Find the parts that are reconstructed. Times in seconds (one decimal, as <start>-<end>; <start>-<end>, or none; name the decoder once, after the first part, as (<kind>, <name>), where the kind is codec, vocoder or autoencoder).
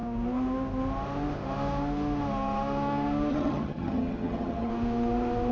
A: 3.3-4.7 (vocoder, HiFi-GAN)